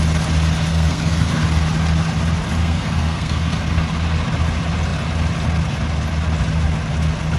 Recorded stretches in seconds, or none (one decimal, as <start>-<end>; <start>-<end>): 0.0-0.7; 1.4-2.6; 3.8-7.4